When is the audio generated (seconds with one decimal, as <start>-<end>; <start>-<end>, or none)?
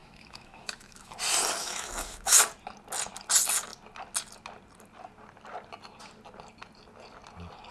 0.0-1.2; 1.6-2.4